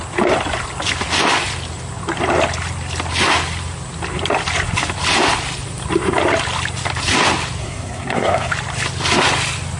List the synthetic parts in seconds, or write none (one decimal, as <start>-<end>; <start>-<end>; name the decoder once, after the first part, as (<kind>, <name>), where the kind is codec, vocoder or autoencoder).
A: 7.6-8.5 (codec, SNAC)